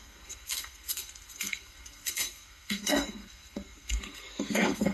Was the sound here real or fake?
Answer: fake